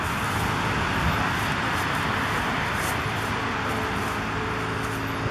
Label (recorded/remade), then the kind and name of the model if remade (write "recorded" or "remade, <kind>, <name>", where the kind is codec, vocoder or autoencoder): recorded